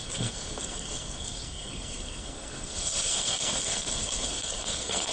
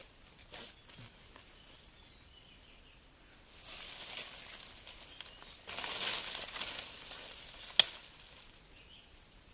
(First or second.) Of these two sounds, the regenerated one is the first